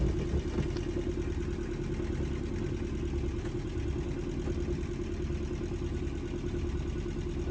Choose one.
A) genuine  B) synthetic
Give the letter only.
A